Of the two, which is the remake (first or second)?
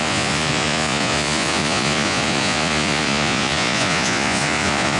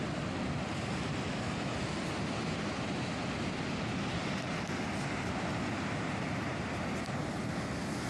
first